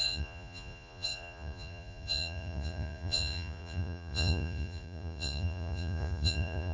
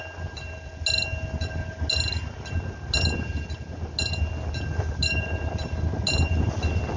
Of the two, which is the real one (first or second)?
second